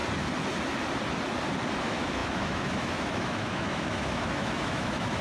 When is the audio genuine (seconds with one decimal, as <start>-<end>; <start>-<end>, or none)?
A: 0.0-1.8